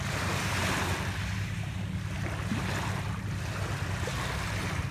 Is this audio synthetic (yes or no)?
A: no